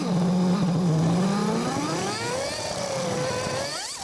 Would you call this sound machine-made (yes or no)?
no